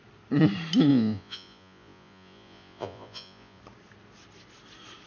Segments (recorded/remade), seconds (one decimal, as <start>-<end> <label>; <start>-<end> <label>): 0.0-0.9 recorded; 0.9-3.6 remade; 3.6-5.1 recorded